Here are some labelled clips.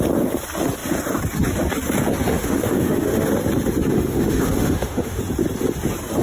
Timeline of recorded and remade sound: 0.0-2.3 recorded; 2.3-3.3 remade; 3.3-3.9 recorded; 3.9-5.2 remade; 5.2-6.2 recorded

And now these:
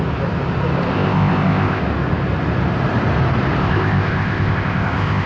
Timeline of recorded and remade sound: 0.0-0.9 recorded; 0.9-1.8 remade; 1.8-3.6 recorded; 3.6-5.3 remade

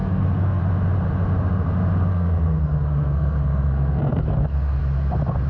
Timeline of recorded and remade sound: 0.0-0.6 remade; 0.6-2.1 recorded; 2.1-4.8 remade; 4.8-5.5 recorded